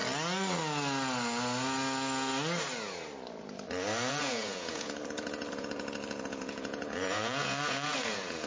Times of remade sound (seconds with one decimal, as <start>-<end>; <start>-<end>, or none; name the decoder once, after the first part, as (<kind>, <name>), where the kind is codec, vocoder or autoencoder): 4.1-8.5 (vocoder, Vocos)